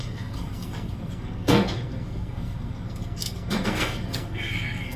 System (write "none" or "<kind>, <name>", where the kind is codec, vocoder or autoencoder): codec, SNAC